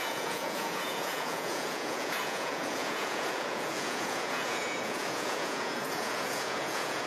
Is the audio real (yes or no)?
no